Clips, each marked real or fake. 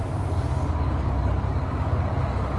fake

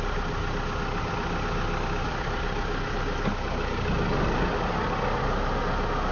real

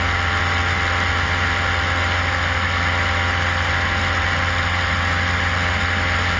real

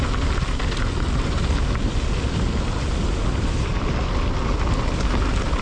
real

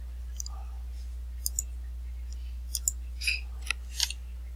real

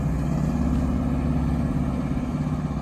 real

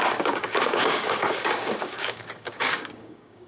fake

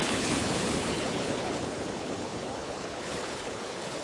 fake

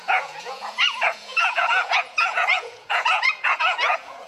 fake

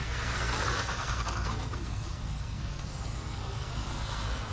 fake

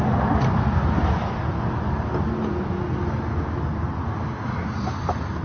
real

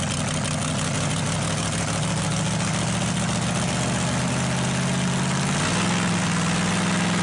real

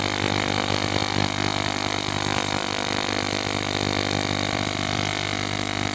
fake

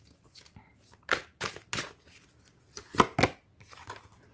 real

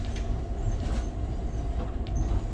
real